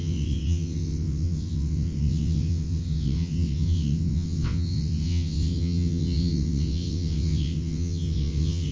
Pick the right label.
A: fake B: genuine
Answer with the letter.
A